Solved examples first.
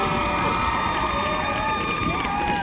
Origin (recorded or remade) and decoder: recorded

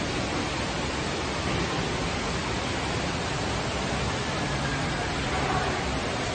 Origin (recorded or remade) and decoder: remade, vocoder, BigVGAN v2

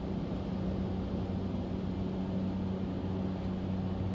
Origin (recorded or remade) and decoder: recorded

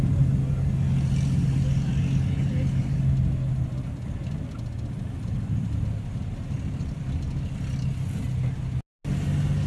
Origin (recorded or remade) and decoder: recorded